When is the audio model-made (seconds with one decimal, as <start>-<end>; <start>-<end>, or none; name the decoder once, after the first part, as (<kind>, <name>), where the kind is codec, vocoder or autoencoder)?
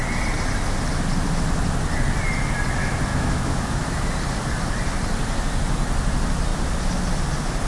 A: 3.1-4.1 (autoencoder, DAC-VAE)